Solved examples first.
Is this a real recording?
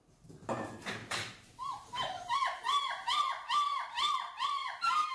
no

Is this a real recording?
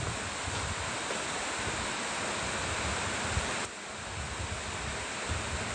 no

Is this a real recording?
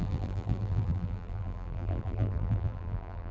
no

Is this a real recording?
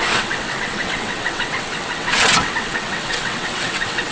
no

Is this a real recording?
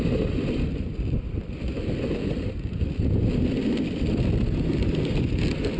yes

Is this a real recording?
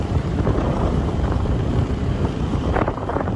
no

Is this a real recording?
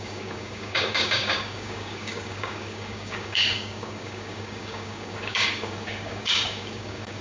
no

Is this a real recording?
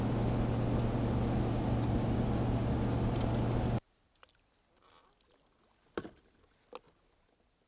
yes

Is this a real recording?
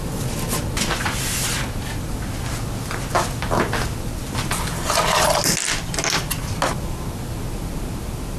yes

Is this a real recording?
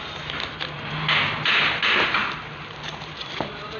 yes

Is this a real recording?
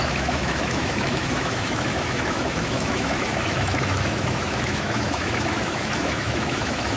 no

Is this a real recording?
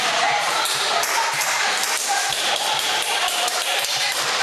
no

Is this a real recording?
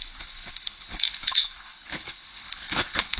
no